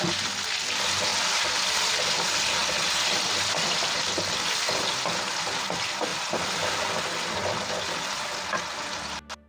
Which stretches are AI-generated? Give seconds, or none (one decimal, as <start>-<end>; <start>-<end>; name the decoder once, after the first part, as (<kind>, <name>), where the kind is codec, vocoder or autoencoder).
1.1-1.8 (vocoder, BigVGAN v2); 2.6-4.0; 6.1-6.8